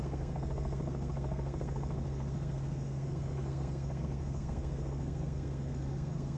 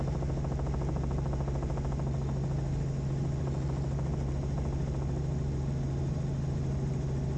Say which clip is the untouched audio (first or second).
second